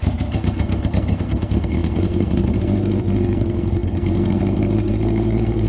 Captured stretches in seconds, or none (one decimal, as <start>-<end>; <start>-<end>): none